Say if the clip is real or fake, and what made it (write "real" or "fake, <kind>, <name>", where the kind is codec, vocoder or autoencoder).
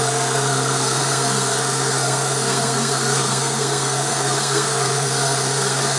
fake, codec, SNAC